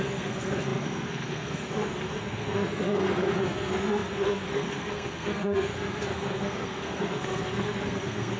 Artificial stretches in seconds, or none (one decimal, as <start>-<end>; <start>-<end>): 0.0-8.4